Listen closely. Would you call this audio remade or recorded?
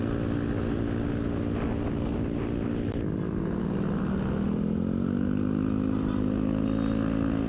recorded